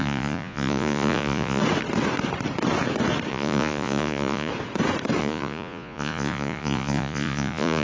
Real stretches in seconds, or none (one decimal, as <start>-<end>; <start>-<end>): 1.6-3.3; 4.5-5.2